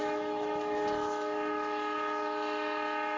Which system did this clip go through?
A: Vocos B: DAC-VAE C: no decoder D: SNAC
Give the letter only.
B